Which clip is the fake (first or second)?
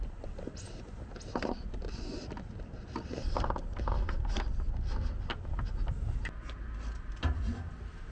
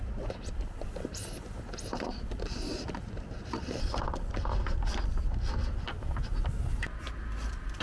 second